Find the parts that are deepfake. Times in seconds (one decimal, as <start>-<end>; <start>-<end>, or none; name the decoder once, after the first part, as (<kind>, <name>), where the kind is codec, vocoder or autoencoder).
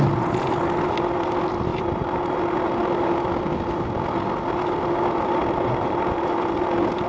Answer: 1.7-2.4 (vocoder, BigVGAN v2); 5.4-6.3